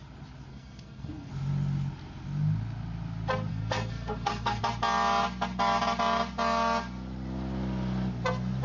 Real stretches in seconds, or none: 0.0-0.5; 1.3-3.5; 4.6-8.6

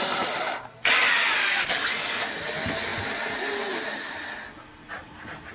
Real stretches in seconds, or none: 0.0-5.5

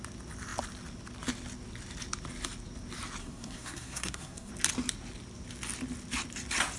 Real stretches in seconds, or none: 0.0-3.2; 4.5-6.8